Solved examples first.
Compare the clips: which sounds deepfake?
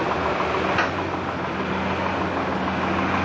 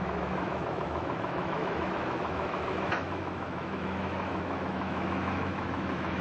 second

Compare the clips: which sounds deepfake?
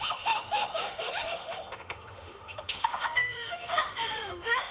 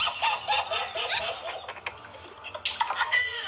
first